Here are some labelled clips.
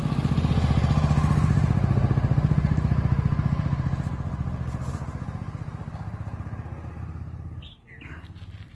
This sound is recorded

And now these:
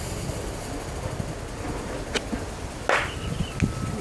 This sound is recorded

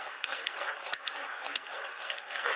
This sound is remade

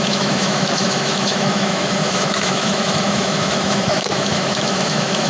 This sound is remade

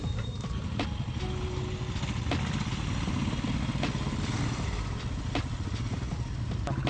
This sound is recorded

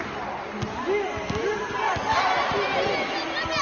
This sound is recorded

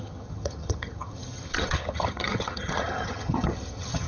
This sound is remade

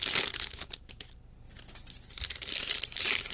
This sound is recorded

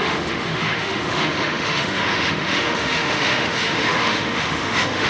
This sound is remade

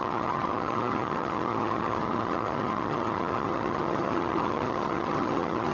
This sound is remade